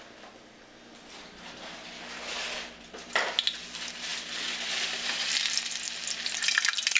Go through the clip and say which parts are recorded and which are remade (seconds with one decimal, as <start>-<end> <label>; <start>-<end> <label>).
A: 0.0-7.0 recorded